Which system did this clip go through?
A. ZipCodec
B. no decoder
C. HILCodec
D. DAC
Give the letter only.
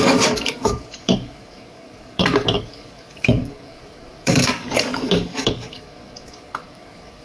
D